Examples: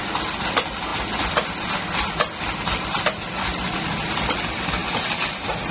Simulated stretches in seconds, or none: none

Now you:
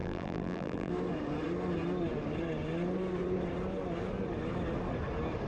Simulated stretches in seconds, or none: 0.0-0.9 (vocoder, BigVGAN v2)